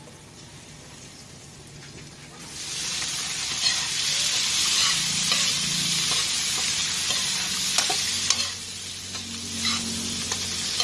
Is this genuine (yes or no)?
yes